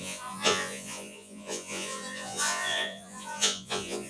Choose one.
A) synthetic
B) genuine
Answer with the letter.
A